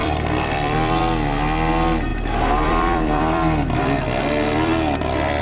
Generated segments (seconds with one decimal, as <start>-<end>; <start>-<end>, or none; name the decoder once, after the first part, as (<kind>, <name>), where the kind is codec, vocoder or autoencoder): 0.0-1.0 (vocoder, BigVGAN v2); 2.1-5.4